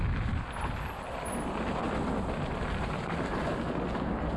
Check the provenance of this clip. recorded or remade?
recorded